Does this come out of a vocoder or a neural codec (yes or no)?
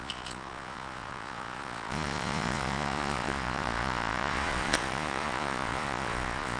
yes